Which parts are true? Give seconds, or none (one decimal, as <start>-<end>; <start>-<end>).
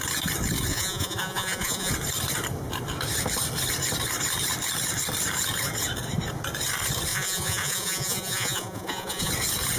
0.0-0.7; 1.9-7.1; 9.3-9.8